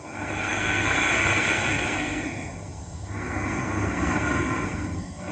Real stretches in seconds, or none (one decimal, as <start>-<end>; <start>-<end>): none

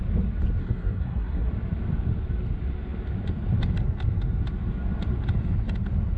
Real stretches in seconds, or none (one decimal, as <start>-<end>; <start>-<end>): 0.0-0.6; 1.5-6.2

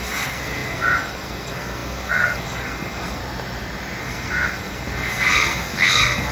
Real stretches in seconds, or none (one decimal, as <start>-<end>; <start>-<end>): 3.2-4.0

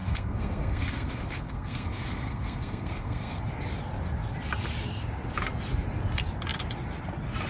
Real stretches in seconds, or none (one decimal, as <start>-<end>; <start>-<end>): 3.4-7.5